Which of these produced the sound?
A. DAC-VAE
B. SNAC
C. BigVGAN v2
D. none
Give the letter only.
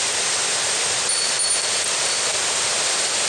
D